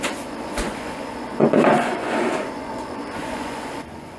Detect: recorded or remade remade